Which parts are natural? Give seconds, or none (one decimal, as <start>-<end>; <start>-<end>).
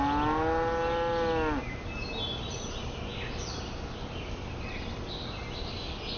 0.0-6.2